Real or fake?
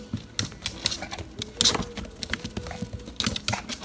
real